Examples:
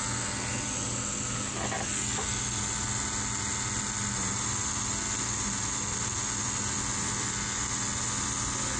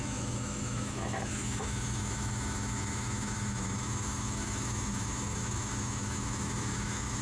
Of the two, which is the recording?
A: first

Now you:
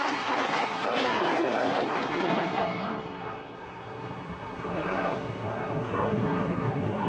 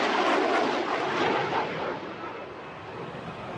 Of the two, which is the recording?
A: second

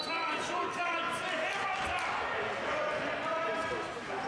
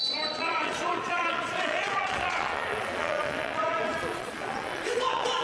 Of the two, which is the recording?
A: first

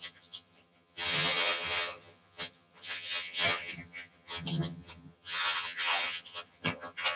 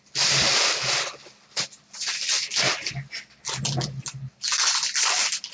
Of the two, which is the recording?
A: second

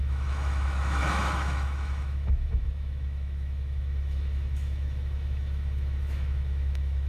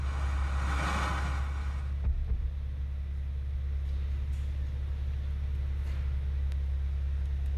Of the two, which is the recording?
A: second